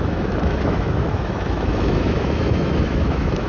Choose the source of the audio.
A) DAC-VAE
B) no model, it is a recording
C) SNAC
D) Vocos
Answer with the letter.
A